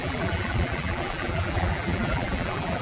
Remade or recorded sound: remade